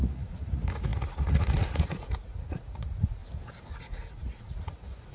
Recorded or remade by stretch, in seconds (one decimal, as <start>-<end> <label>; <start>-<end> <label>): 0.0-3.2 remade; 3.2-3.7 recorded; 3.7-5.1 remade